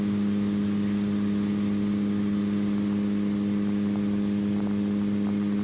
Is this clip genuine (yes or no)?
yes